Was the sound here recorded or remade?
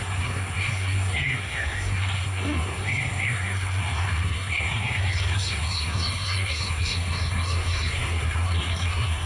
remade